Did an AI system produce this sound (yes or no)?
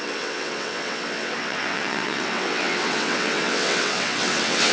yes